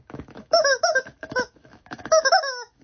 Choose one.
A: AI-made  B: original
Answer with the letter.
A